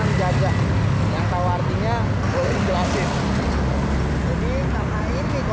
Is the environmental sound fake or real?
real